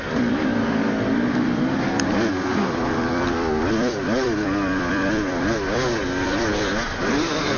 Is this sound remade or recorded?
remade